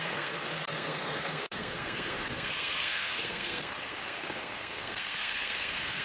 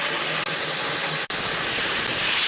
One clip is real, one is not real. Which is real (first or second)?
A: second